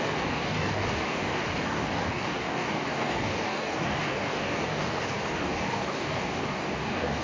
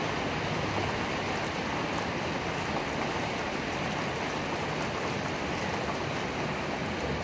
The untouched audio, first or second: second